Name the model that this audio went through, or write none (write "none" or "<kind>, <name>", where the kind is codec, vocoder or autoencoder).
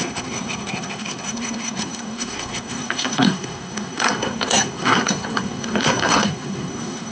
codec, SNAC